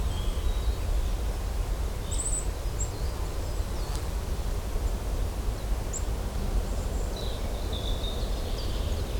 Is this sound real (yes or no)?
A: yes